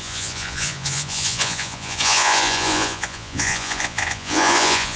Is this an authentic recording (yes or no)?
no